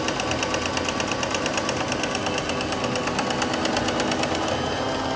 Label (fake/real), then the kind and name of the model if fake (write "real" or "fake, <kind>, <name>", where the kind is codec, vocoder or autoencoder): real